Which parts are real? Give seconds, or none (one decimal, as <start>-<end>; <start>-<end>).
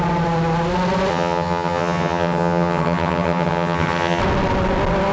0.0-1.1; 4.2-5.1